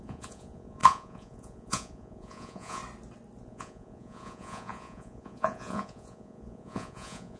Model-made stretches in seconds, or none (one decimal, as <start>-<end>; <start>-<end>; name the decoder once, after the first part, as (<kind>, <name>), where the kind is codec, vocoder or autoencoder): 0.0-2.8 (vocoder, Vocos); 3.4-7.4